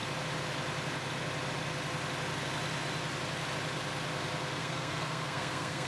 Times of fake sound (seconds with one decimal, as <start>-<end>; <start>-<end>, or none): 4.6-5.9